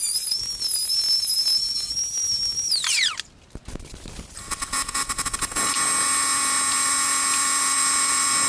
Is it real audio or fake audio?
real